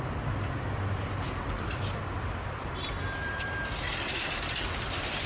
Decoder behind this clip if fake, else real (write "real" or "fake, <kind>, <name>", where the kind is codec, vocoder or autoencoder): fake, vocoder, BigVGAN v2